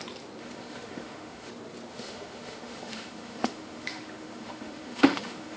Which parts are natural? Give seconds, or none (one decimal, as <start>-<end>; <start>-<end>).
0.0-0.4; 1.5-1.9